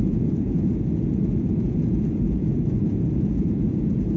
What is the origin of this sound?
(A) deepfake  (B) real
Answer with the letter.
A